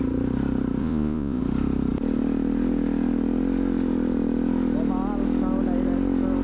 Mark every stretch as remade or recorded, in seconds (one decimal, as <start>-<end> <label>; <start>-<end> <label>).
0.0-0.8 recorded; 0.8-1.4 remade; 1.4-6.4 recorded